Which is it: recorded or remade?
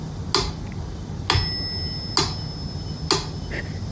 recorded